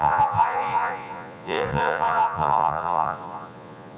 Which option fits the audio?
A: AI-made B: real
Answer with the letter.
A